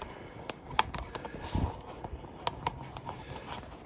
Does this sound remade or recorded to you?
recorded